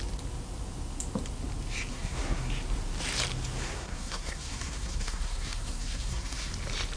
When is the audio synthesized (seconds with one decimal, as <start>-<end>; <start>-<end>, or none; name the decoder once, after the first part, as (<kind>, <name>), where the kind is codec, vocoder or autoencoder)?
1.9-2.5 (codec, SNAC); 3.6-6.5